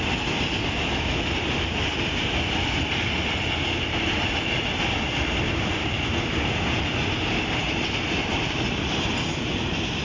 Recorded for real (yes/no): yes